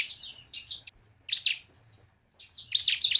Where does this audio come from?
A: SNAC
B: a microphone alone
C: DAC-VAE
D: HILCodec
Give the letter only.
B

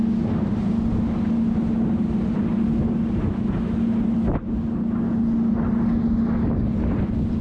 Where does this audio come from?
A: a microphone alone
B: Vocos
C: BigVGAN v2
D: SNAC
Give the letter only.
A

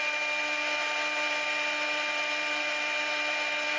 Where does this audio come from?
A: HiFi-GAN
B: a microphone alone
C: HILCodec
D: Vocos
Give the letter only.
B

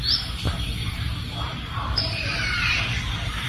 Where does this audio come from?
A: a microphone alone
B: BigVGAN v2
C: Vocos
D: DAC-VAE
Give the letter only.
B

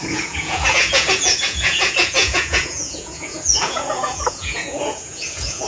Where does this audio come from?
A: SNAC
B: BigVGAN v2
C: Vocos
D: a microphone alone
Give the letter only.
C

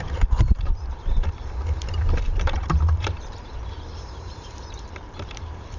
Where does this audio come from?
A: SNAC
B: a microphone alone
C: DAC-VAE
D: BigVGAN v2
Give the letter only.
D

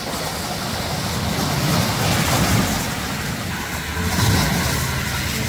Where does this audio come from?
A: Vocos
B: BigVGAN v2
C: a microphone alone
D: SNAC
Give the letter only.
C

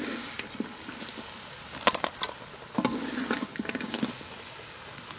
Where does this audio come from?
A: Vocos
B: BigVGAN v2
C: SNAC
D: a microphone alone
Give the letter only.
D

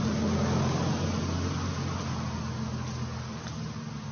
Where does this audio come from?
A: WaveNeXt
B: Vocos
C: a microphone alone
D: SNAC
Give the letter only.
C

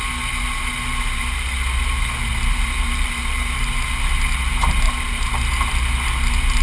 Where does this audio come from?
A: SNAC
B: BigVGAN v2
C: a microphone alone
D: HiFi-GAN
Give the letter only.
C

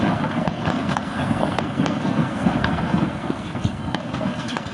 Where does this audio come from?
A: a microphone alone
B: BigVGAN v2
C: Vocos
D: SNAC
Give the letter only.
D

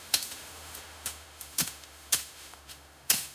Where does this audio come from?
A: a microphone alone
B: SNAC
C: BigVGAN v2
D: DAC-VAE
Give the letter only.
D